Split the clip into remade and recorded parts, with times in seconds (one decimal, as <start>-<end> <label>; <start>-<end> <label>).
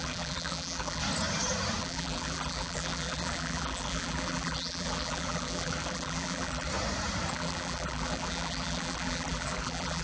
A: 0.0-1.0 remade; 1.0-1.8 recorded; 1.8-6.7 remade; 6.7-7.3 recorded; 7.3-10.0 remade